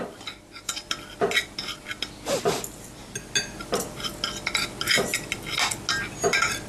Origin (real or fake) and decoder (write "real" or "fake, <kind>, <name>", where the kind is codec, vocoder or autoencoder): real